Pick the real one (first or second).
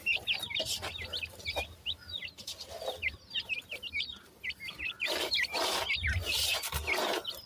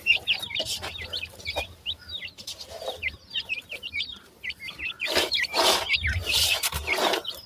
first